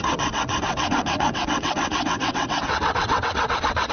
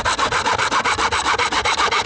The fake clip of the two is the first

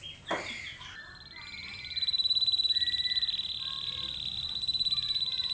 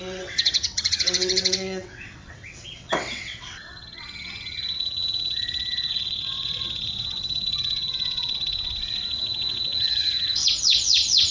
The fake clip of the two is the second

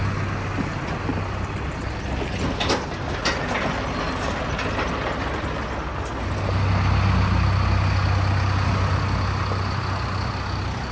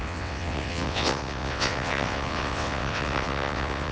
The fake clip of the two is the second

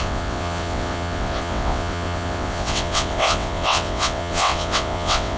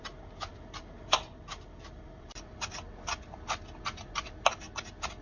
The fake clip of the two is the first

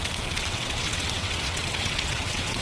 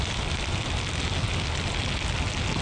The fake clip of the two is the first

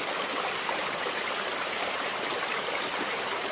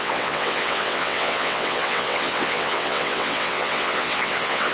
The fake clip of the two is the second